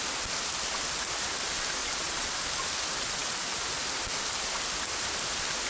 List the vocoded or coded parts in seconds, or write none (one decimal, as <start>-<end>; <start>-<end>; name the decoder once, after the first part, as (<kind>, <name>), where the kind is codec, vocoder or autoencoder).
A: 1.8-2.4 (vocoder, Vocos)